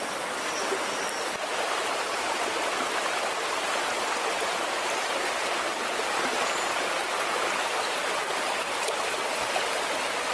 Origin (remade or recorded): recorded